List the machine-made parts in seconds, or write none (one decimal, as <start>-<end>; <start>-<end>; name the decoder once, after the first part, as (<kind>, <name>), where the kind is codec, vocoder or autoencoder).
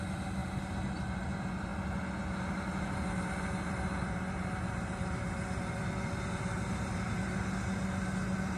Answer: none